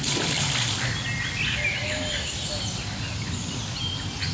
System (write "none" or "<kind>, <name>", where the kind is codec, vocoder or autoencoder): none